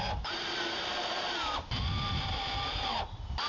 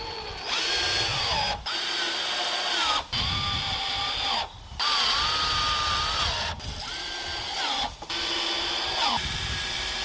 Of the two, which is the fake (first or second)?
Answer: first